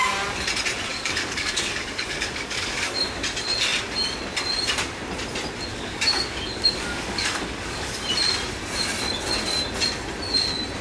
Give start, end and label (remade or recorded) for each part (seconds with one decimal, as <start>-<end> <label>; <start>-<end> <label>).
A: 0.0-0.9 recorded; 0.9-2.9 remade; 2.9-5.7 recorded; 5.7-8.0 remade; 8.0-10.8 recorded